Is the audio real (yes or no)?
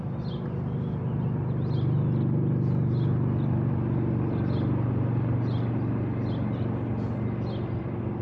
yes